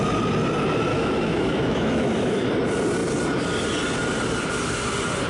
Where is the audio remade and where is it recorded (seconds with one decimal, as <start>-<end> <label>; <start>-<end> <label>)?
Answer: 0.0-0.9 recorded; 0.9-2.5 remade; 2.5-5.3 recorded